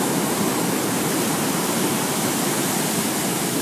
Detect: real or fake real